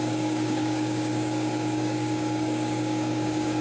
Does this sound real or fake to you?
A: fake